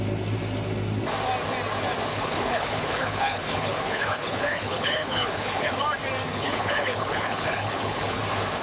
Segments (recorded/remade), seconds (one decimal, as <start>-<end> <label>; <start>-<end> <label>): 0.0-2.1 recorded; 2.1-5.7 remade; 5.7-6.3 recorded; 6.3-8.2 remade; 8.2-8.6 recorded